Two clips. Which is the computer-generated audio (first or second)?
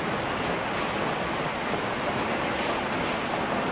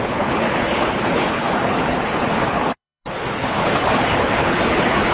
second